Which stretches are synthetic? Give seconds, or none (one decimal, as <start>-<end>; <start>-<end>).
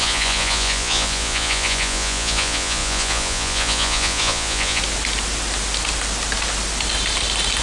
0.0-4.8